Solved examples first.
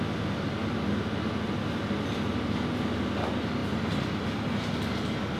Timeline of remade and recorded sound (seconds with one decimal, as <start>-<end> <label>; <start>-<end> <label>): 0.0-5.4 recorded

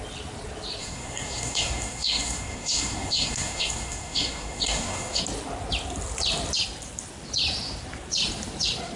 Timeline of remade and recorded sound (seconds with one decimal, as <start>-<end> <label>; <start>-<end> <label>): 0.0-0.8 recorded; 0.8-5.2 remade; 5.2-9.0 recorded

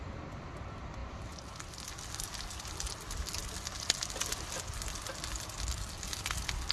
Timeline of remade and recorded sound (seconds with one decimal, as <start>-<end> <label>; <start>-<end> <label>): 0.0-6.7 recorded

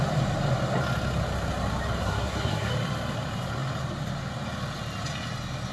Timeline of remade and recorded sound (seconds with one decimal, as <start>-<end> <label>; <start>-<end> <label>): 0.0-2.0 recorded; 2.0-2.7 remade; 2.7-5.7 recorded

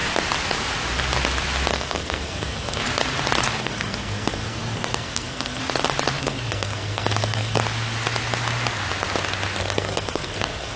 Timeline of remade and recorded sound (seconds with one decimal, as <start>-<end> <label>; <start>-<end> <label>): 0.0-1.7 recorded; 1.7-2.8 remade; 2.8-3.6 recorded; 3.6-5.6 remade; 5.6-6.2 recorded; 6.2-7.6 remade; 7.6-9.6 recorded; 9.6-10.8 remade

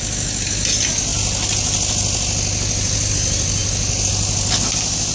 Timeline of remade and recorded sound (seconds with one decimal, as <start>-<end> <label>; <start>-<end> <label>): 0.0-5.1 recorded

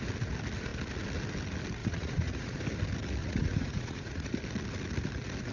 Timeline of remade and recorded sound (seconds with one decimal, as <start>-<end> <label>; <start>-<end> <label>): 0.0-1.8 recorded; 1.8-2.6 remade; 2.6-3.2 recorded; 3.2-4.3 remade; 4.3-5.5 recorded

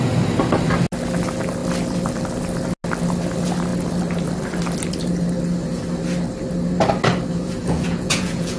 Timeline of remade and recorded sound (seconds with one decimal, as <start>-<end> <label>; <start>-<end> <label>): 0.0-7.6 recorded; 7.6-8.6 remade